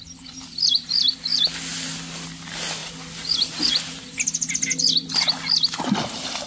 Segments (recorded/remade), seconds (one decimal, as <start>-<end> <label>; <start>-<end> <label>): 0.0-6.5 recorded